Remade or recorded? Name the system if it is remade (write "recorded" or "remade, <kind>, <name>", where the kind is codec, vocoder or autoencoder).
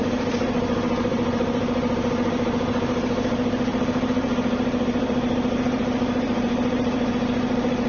remade, vocoder, BigVGAN v2